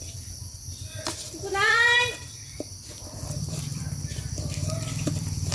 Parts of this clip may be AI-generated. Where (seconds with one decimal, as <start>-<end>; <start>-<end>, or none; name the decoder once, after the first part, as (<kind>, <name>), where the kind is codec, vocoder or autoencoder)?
0.0-5.5 (vocoder, BigVGAN v2)